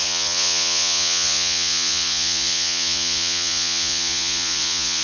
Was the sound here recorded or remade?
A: remade